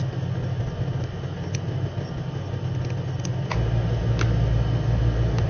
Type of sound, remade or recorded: recorded